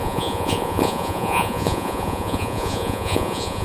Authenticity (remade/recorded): remade